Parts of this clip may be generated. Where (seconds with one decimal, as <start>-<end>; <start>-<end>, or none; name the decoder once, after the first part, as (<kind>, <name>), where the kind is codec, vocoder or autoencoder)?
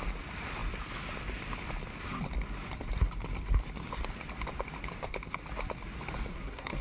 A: 6.3-6.8 (codec, SNAC)